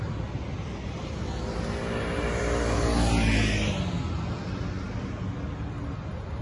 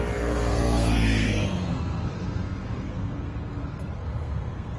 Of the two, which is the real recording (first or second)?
first